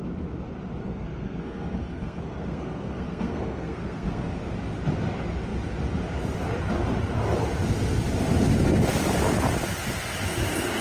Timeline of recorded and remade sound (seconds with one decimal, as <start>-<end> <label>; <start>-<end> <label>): 0.0-0.8 recorded; 0.8-4.4 remade; 4.4-10.8 recorded